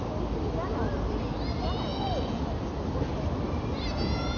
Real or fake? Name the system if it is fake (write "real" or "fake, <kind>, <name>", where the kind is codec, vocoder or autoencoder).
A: real